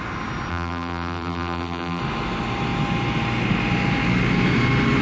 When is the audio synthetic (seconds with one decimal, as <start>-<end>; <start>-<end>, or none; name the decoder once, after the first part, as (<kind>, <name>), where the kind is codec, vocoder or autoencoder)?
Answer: 0.5-2.0 (vocoder, BigVGAN v2)